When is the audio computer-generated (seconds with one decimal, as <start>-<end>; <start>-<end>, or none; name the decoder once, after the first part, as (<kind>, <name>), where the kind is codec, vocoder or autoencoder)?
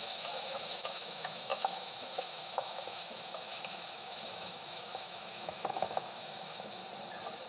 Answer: 0.0-6.8 (autoencoder, DAC-VAE)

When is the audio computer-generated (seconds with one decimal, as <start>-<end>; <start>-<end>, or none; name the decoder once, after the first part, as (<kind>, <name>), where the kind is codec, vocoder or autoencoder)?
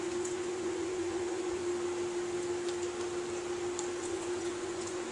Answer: 0.0-1.6 (vocoder, Vocos); 4.0-5.1